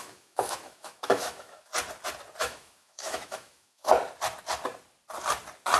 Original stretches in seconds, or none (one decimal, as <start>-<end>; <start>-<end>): 1.7-2.4; 3.9-5.8